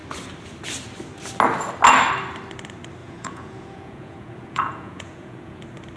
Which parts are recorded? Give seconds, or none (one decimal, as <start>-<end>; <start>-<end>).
0.0-3.0; 5.6-6.0